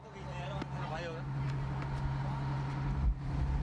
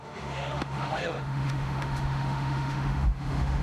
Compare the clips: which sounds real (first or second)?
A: first